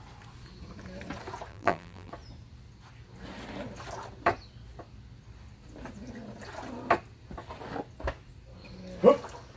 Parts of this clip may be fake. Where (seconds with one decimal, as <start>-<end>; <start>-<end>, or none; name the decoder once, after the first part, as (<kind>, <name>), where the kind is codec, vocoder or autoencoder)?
1.5-2.1 (vocoder, BigVGAN v2)